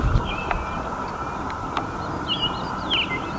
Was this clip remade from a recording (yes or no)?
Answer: no